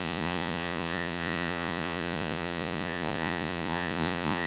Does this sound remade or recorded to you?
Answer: remade